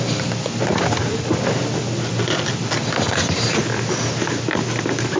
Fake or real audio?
real